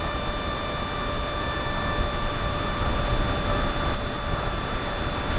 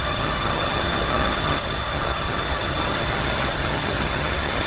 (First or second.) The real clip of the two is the first